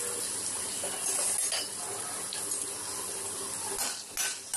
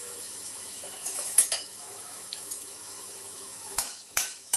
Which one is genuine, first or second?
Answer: first